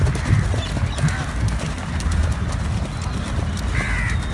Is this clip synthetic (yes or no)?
no